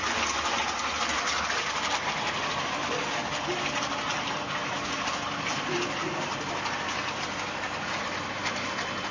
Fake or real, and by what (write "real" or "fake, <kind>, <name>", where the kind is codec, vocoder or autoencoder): real